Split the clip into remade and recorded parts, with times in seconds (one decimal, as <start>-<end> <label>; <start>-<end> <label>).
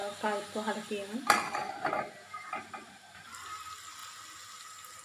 0.0-5.0 recorded